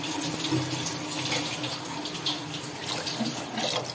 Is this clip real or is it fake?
real